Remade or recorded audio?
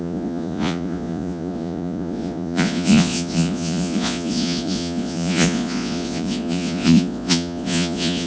remade